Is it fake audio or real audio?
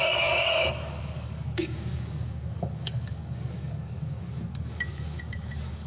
fake